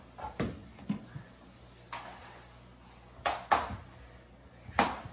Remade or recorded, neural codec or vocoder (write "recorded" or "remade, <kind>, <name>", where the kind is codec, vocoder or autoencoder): recorded